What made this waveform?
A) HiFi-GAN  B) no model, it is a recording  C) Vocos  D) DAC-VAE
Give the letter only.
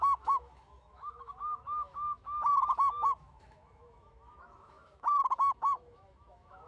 D